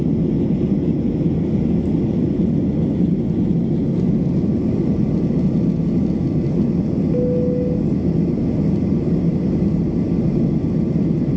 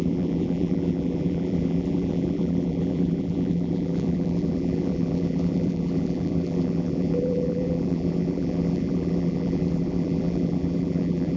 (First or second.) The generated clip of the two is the second